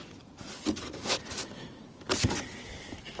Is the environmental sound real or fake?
real